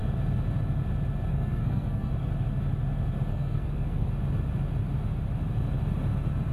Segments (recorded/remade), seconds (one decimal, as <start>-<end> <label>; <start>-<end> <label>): 0.0-1.3 recorded; 1.3-2.1 remade; 2.1-3.3 recorded; 3.3-4.1 remade; 4.1-6.5 recorded